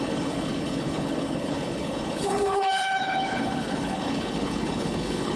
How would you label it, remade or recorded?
remade